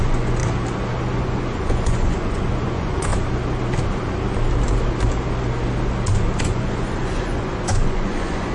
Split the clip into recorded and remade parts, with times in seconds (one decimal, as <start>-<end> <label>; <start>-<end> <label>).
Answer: 0.0-0.4 remade; 0.4-1.0 recorded; 1.0-3.1 remade; 3.1-6.4 recorded; 6.4-8.5 remade